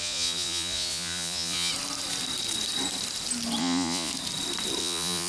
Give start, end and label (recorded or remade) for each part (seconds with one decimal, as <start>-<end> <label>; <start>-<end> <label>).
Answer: 0.0-1.7 remade; 1.7-3.6 recorded; 3.6-4.1 remade; 4.1-4.8 recorded; 4.8-5.3 remade

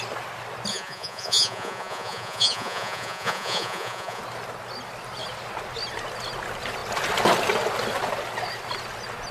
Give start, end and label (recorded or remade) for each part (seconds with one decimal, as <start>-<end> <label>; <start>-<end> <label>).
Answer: 0.0-0.7 recorded; 0.7-4.2 remade; 4.2-9.3 recorded